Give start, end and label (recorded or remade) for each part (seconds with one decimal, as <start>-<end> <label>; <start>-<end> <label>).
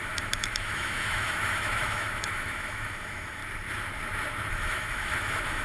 0.0-3.4 remade; 3.4-4.5 recorded; 4.5-5.6 remade